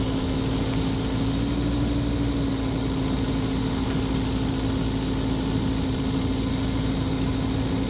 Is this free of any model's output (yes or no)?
yes